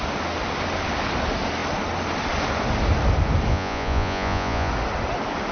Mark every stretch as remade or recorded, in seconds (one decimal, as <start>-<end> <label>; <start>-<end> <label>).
0.0-3.5 recorded; 3.5-4.7 remade; 4.7-5.5 recorded